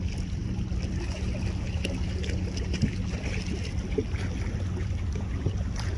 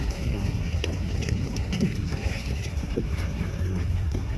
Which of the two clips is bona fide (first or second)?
first